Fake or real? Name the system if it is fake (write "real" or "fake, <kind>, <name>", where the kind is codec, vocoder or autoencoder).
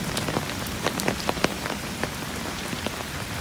fake, vocoder, BigVGAN v2